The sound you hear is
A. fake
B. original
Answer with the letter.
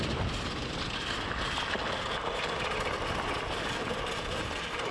B